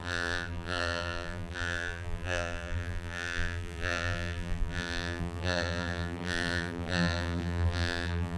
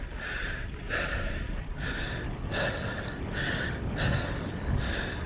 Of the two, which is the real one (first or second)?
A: second